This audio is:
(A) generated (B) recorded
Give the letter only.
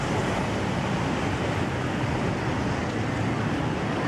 A